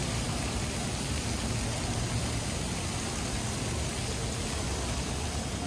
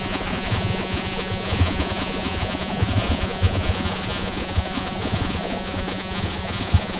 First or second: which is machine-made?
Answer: second